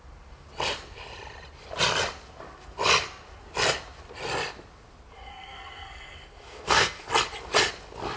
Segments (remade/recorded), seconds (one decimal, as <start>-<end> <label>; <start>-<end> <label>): 0.0-5.3 recorded; 5.3-7.1 remade; 7.1-8.2 recorded